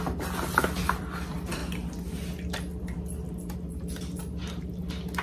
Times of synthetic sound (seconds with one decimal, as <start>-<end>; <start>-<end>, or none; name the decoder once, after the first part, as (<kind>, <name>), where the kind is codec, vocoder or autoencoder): 0.0-1.6 (vocoder, BigVGAN v2); 3.7-5.2